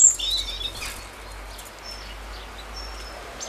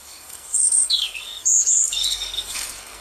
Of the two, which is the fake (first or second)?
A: second